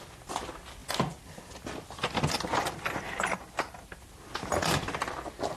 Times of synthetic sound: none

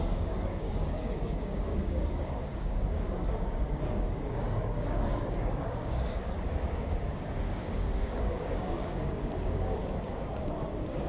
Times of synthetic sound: 0.0-9.8 (codec, DAC); 10.5-11.1

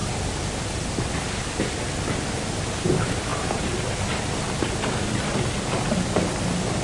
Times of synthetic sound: none

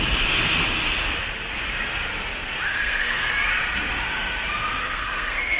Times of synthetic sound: 2.7-3.3 (codec, SNAC); 4.8-5.6

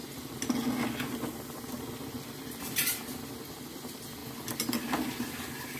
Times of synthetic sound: none

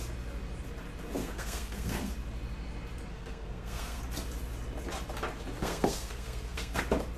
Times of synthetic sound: 1.2-2.1 (codec, SNAC); 3.1-4.0; 5.6-6.8

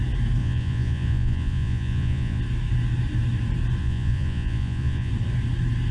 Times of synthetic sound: 0.4-2.4 (vocoder, Vocos); 3.8-5.1

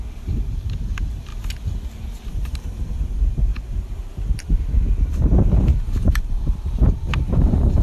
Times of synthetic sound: 0.0-1.3 (vocoder, BigVGAN v2); 2.3-7.8